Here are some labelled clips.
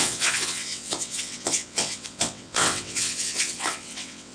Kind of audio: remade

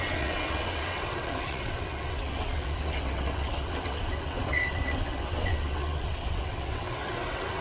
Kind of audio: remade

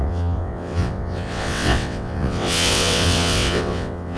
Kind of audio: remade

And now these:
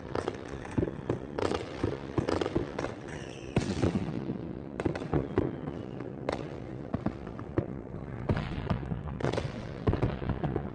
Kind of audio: remade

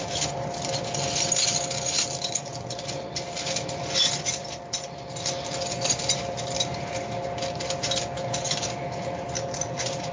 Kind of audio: recorded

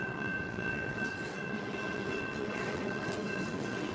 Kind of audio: remade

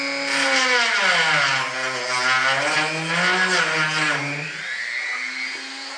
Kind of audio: recorded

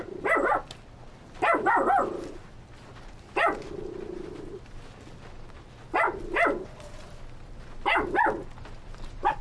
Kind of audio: recorded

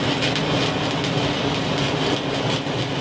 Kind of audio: recorded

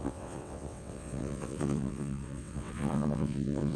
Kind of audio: remade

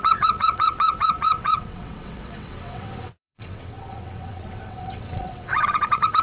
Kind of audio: remade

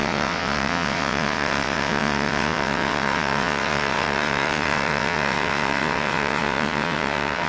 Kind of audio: remade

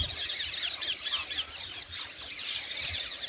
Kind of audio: recorded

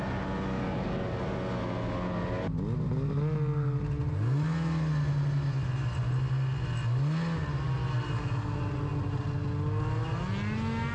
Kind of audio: recorded